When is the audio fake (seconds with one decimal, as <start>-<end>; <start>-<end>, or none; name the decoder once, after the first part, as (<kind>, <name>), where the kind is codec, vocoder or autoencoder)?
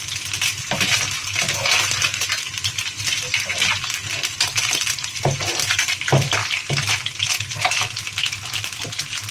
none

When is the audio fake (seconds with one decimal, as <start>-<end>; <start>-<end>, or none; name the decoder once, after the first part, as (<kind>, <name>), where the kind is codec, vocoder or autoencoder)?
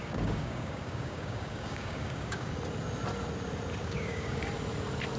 0.0-2.5 (codec, DAC); 3.8-4.4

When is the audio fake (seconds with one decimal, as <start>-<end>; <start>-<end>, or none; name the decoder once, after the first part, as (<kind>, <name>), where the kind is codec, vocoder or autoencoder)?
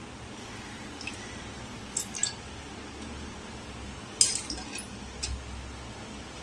none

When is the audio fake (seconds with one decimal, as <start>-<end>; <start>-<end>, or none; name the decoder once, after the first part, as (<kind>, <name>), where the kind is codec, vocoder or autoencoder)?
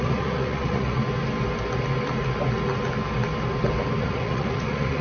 0.0-1.0 (vocoder, Vocos); 4.0-5.0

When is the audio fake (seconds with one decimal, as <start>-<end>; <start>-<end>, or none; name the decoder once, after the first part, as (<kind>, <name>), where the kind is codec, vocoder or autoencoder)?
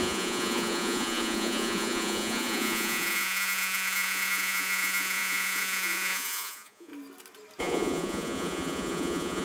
0.0-6.9 (vocoder, Vocos); 7.6-9.4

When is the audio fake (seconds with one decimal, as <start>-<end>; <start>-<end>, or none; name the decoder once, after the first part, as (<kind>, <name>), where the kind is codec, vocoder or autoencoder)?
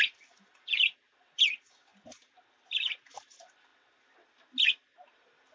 none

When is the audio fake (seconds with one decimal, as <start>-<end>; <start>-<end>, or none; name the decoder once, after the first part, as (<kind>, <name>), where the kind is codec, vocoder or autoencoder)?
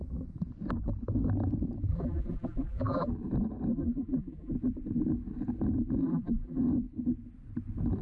1.9-3.1 (vocoder, BigVGAN v2); 3.7-4.5; 6.0-6.6